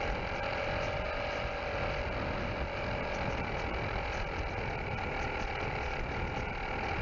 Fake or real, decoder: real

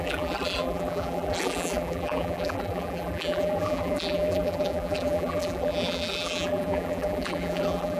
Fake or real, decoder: fake, vocoder, BigVGAN v2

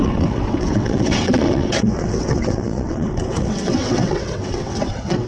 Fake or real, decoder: fake, vocoder, WaveNeXt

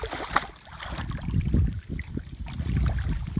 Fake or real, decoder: real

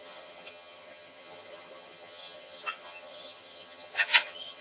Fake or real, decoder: fake, vocoder, HiFi-GAN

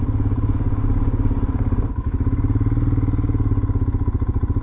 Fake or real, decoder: real